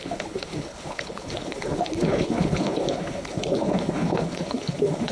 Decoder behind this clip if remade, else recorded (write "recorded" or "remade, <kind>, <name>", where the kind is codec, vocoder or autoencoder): remade, codec, HILCodec